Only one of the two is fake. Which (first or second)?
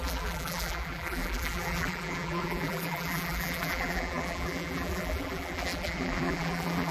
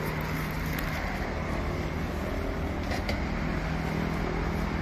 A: first